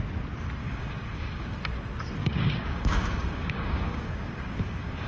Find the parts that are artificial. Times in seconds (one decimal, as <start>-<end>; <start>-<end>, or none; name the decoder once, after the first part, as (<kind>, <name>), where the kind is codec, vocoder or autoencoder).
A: 0.6-1.7 (codec, DAC); 2.2-5.1